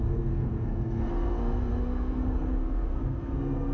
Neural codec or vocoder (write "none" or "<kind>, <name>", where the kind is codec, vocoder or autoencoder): codec, SNAC